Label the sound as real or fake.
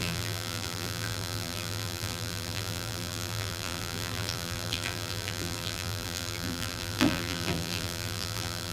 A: fake